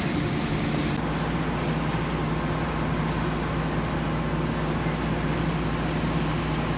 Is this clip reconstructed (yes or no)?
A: no